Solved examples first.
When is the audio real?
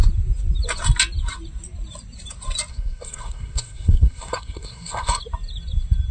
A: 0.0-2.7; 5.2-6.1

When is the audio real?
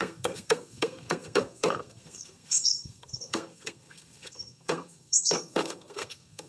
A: none